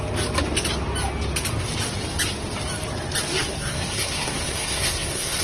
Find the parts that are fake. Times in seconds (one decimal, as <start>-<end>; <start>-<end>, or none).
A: 3.4-5.4